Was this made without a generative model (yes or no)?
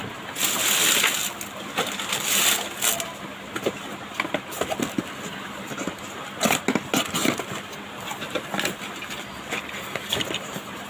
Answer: yes